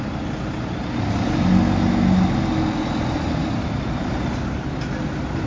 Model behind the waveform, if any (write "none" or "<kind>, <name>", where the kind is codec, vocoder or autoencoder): none